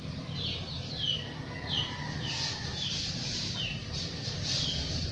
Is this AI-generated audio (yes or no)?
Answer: no